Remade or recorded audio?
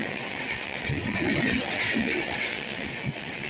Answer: remade